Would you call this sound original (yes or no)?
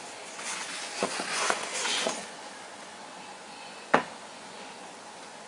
no